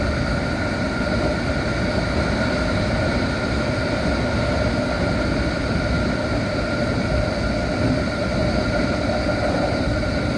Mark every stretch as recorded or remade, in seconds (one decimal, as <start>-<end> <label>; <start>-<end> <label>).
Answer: 0.0-10.4 recorded